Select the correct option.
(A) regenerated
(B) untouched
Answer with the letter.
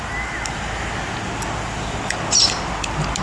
B